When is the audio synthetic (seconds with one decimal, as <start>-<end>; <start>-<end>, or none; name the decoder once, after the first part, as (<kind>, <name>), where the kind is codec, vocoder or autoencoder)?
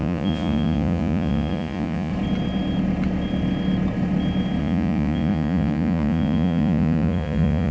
0.0-2.1 (vocoder, Vocos); 4.6-7.7